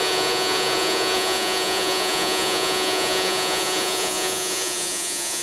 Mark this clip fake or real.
fake